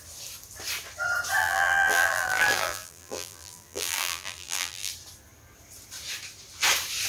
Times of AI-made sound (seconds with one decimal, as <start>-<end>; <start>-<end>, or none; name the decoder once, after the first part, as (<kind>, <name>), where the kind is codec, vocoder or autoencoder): 1.4-4.9 (vocoder, BigVGAN v2)